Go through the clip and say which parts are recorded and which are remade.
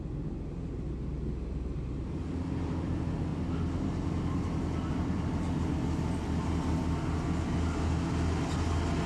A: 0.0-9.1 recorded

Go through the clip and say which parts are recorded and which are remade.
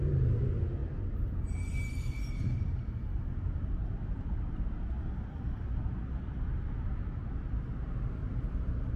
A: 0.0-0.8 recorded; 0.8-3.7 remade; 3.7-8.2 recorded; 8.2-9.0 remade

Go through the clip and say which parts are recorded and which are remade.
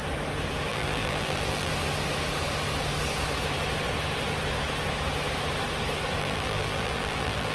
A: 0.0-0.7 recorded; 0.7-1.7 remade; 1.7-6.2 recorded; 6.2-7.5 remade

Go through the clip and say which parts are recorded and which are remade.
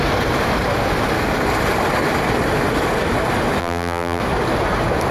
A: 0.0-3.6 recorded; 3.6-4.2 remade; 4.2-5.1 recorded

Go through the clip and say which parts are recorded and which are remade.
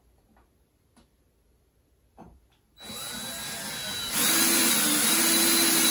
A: 0.0-4.6 recorded; 4.6-5.2 remade; 5.2-5.9 recorded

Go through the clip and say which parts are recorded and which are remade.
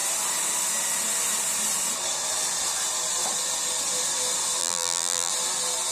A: 0.0-4.6 recorded; 4.6-5.3 remade; 5.3-5.9 recorded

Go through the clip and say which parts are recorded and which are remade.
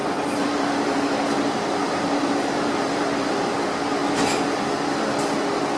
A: 0.0-1.0 remade; 1.0-1.8 recorded; 1.8-3.4 remade; 3.4-5.8 recorded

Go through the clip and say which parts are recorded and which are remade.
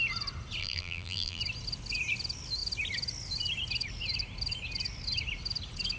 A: 0.0-0.6 recorded; 0.6-1.4 remade; 1.4-6.0 recorded